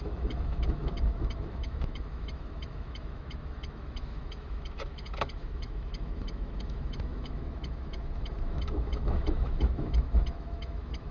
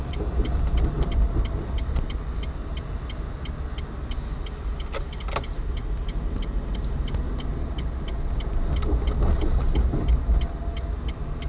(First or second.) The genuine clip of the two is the second